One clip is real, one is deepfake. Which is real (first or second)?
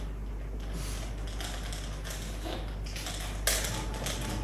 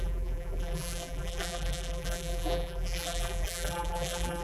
first